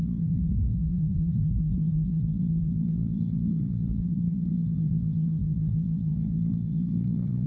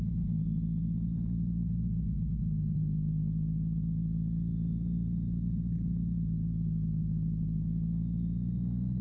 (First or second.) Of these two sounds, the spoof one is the first